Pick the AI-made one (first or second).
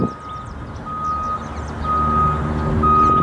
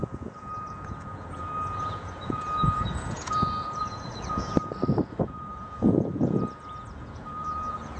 second